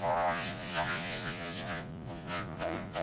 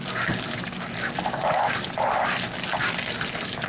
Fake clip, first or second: first